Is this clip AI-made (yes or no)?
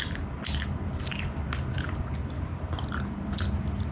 no